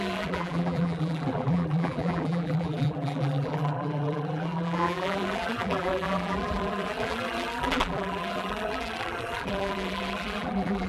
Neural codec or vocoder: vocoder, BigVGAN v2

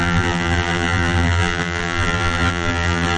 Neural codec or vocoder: vocoder, BigVGAN v2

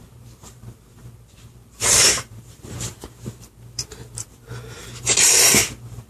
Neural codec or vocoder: vocoder, BigVGAN v2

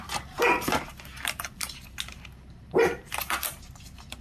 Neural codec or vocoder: vocoder, BigVGAN v2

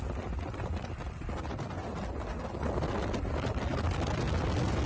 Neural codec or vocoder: none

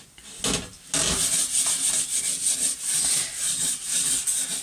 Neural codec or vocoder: none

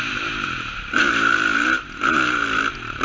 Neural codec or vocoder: vocoder, BigVGAN v2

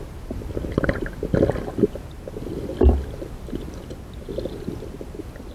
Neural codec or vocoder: vocoder, BigVGAN v2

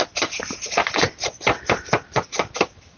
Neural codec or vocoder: none